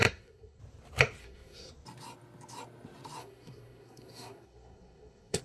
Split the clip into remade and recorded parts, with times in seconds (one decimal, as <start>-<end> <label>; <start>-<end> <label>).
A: 0.0-0.6 remade; 0.6-1.2 recorded; 1.2-1.7 remade; 1.7-3.2 recorded; 3.2-5.4 remade